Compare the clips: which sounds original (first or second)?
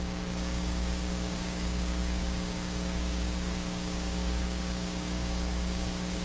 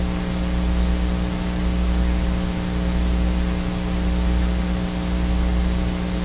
second